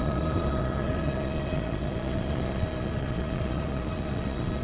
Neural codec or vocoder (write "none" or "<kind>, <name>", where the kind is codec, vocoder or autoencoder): vocoder, Vocos